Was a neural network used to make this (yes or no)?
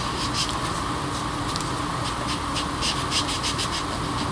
no